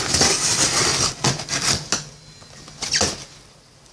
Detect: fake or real real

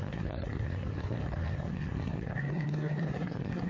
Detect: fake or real fake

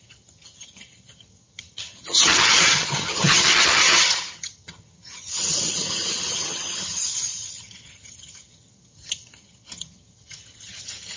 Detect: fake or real fake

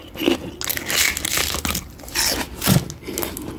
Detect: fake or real real